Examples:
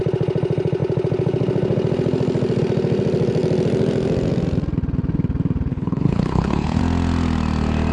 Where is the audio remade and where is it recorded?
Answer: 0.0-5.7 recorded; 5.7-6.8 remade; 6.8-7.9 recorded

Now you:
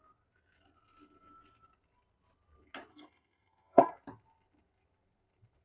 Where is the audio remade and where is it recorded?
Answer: 0.0-2.9 recorded; 2.9-3.9 remade; 3.9-5.6 recorded

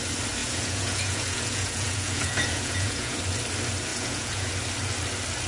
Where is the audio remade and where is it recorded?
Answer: 0.0-0.4 recorded; 0.4-3.2 remade; 3.2-3.9 recorded; 3.9-4.5 remade; 4.5-5.5 recorded

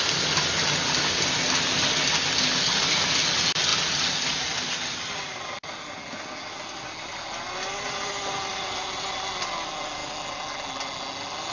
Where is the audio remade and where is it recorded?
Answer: 0.0-11.5 recorded

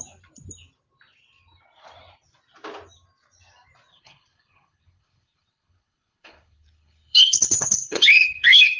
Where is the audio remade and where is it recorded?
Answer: 0.0-3.9 recorded; 3.9-8.8 remade